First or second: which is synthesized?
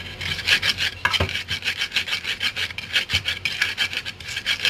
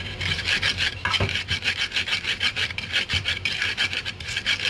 second